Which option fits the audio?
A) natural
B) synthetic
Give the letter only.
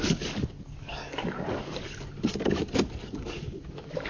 B